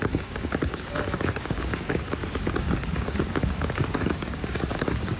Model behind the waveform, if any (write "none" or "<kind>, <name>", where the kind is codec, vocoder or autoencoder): codec, DAC